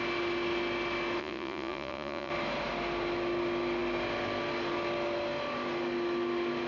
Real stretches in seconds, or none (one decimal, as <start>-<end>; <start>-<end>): 0.0-1.2; 2.3-6.7